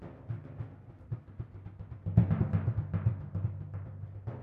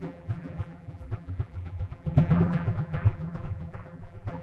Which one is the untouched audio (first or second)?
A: first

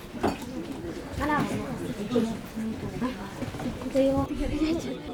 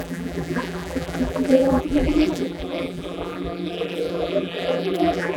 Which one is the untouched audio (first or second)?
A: first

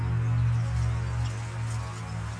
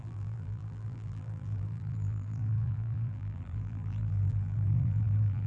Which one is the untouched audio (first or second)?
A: first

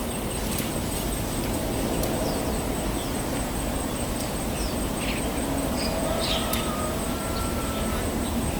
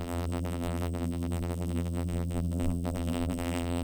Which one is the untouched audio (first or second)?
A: first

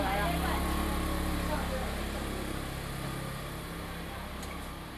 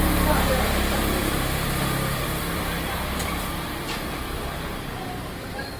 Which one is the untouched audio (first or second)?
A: first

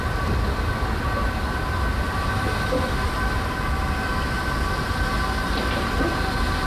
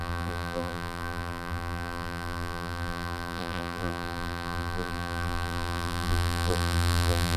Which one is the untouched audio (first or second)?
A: first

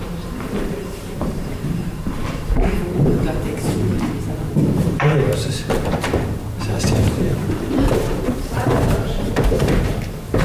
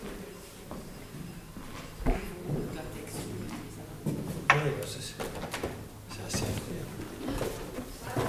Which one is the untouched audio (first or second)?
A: second